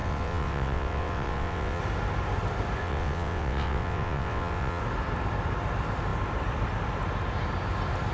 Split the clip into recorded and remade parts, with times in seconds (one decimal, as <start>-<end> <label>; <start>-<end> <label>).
0.0-1.8 remade; 1.8-2.8 recorded; 2.8-4.8 remade; 4.8-8.1 recorded